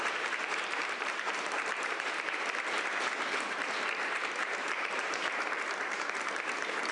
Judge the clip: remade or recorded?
remade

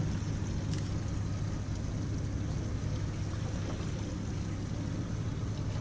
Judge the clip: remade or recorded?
recorded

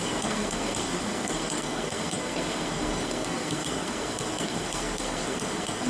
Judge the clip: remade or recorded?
remade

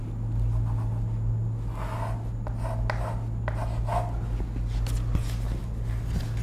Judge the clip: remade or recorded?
recorded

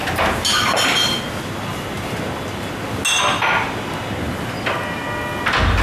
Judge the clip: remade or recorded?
recorded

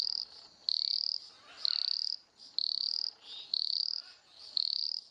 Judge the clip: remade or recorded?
recorded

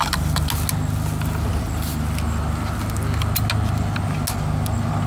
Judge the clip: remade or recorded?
recorded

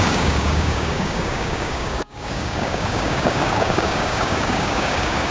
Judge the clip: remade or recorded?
remade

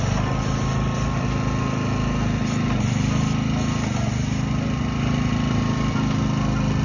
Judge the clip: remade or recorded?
recorded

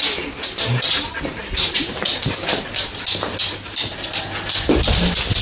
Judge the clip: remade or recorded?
recorded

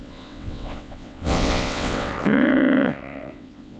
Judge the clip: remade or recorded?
remade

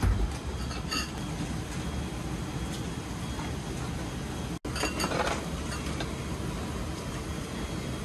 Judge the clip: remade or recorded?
recorded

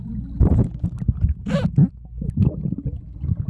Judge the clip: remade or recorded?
recorded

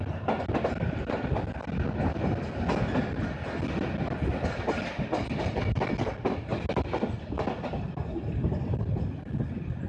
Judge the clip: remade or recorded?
recorded